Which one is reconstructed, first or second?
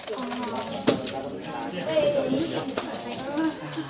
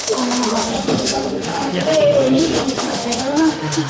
second